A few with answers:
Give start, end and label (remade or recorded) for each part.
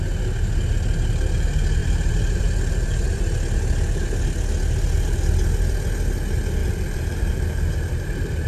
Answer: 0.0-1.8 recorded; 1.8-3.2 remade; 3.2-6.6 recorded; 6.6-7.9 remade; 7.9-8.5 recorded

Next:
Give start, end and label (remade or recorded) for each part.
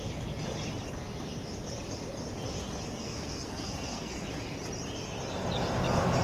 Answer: 0.0-3.0 recorded; 3.0-4.2 remade; 4.2-6.2 recorded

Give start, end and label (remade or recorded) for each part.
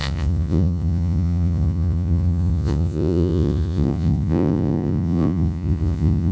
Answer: 0.0-6.3 remade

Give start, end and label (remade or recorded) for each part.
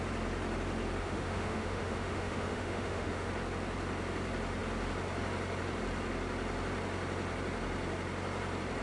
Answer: 0.0-1.0 recorded; 1.0-3.3 remade; 3.3-8.8 recorded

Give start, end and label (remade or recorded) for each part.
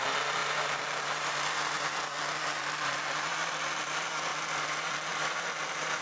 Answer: 0.0-4.3 remade; 4.3-4.9 recorded; 4.9-6.0 remade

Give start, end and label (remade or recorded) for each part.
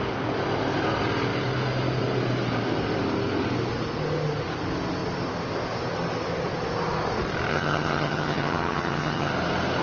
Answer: 0.0-7.5 recorded; 7.5-9.3 remade; 9.3-9.8 recorded